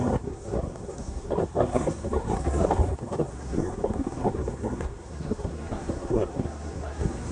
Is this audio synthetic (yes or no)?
yes